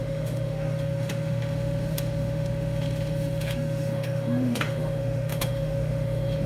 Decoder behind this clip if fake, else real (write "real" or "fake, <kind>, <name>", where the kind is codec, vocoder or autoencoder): fake, autoencoder, DAC-VAE